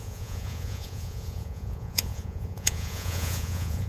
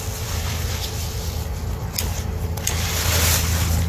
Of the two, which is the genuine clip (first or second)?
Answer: second